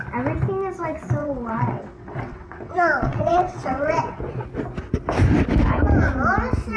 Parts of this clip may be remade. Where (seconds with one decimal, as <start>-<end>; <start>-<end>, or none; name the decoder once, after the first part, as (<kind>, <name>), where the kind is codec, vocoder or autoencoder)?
1.2-4.2 (vocoder, WaveNeXt)